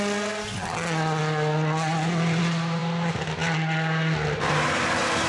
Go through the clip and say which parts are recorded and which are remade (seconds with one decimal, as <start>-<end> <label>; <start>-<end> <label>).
0.0-5.3 recorded